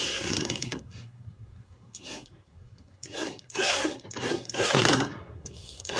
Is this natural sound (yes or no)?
no